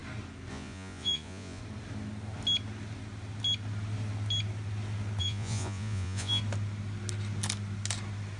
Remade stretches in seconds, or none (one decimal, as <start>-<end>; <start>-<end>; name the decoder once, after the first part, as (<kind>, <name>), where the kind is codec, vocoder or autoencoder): 0.5-1.6 (vocoder, Vocos); 5.2-6.4